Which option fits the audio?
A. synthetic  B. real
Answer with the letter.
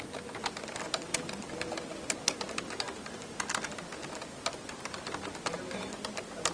B